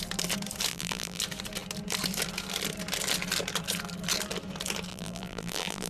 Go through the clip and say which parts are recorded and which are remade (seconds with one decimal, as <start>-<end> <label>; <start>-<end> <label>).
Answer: 0.0-0.7 recorded; 0.7-1.2 remade; 1.2-4.9 recorded; 4.9-5.9 remade